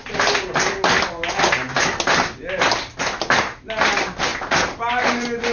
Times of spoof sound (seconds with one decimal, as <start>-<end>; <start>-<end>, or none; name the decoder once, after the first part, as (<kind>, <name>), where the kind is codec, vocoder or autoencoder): none